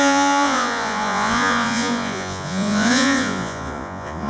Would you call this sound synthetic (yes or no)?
yes